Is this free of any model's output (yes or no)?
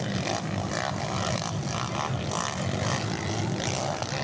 yes